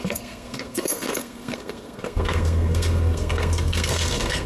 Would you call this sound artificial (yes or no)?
yes